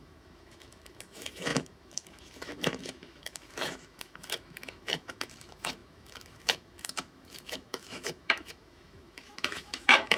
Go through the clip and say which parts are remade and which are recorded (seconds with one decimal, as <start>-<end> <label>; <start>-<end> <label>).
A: 0.0-10.2 remade